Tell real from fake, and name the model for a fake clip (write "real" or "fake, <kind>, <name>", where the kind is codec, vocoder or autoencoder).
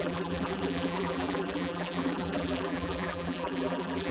fake, vocoder, BigVGAN v2